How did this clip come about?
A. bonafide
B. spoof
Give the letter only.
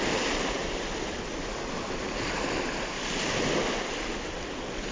A